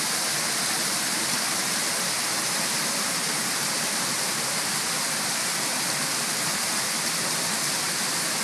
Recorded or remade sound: recorded